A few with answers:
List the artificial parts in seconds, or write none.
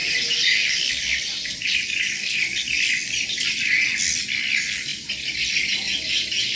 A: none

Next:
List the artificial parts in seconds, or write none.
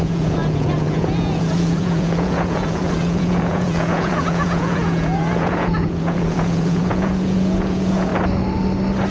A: 0.0-8.1 (vocoder, Vocos)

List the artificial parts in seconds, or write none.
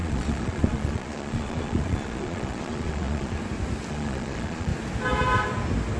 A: 0.0-3.4 (vocoder, Vocos); 3.9-4.7